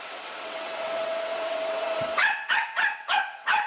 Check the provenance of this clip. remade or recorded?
remade